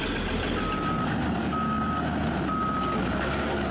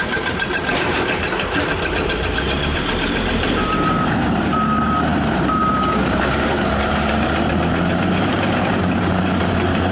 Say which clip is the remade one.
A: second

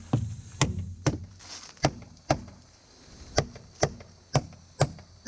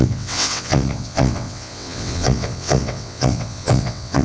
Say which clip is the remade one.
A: second